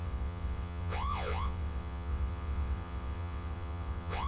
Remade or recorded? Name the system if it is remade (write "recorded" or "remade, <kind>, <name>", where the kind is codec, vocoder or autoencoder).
remade, vocoder, WaveNeXt